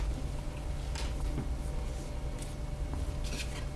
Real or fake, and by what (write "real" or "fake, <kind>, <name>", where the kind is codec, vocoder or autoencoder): real